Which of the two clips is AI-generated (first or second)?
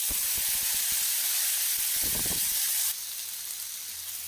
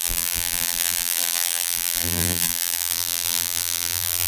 second